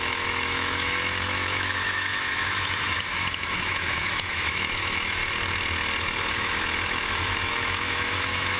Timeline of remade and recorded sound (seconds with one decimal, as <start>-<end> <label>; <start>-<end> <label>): 0.0-5.2 remade; 5.2-6.0 recorded; 6.0-8.6 remade